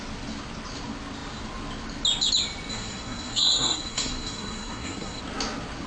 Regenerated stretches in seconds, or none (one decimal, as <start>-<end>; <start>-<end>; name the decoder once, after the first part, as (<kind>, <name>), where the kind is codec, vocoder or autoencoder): 2.7-5.2 (codec, SNAC)